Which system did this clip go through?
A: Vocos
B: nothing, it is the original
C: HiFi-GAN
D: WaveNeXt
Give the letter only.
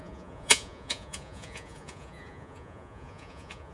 A